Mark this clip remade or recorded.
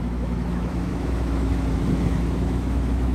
remade